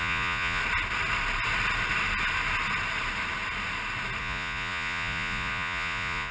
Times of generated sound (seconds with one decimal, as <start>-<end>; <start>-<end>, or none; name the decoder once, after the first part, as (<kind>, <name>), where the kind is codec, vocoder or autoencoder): 0.0-0.6 (vocoder, Vocos); 4.2-6.3

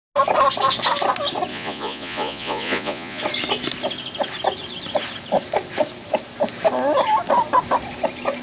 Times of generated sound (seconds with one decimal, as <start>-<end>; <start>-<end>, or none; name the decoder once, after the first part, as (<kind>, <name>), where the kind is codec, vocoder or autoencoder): 1.5-3.2 (vocoder, Vocos)

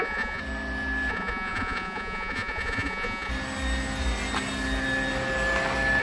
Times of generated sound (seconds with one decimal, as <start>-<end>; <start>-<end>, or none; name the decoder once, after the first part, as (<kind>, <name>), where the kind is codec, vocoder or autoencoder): 0.0-0.4 (vocoder, Vocos); 1.1-3.3